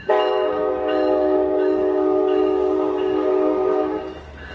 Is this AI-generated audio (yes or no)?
yes